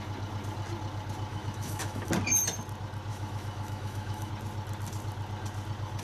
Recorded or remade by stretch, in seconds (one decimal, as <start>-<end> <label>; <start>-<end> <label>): 0.0-1.3 recorded; 1.3-2.1 remade; 2.1-3.1 recorded; 3.1-4.3 remade; 4.3-6.0 recorded